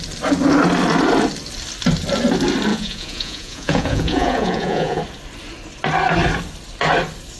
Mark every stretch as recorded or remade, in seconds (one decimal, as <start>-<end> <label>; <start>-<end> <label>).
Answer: 0.0-2.7 recorded; 2.7-5.0 remade; 5.0-7.4 recorded